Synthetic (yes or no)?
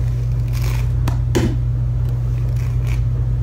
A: no